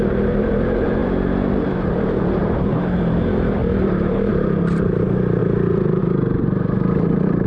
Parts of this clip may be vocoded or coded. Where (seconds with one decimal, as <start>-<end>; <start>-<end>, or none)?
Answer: 0.0-5.4; 6.0-7.5